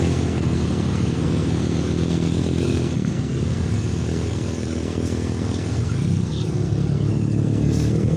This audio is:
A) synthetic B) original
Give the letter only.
A